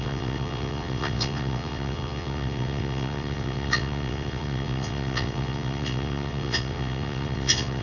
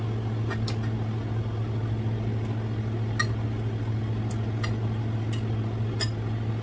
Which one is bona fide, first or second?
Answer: second